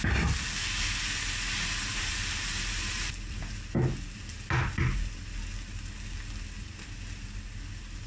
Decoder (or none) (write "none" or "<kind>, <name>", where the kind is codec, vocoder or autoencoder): none